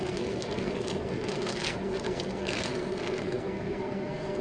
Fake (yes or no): yes